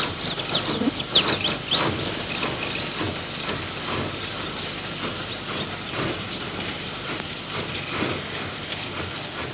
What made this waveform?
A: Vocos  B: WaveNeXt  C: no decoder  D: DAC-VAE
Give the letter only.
C